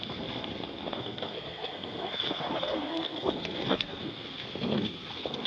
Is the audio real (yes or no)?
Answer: no